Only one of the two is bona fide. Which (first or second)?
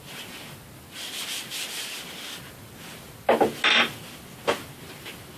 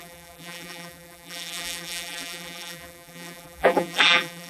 first